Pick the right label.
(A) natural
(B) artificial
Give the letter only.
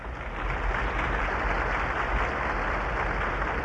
A